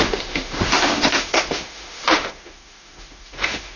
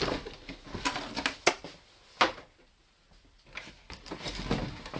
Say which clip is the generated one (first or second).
first